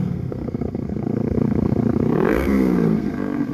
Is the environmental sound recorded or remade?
remade